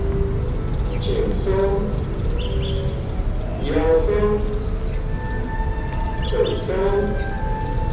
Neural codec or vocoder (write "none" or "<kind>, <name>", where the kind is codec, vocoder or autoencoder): none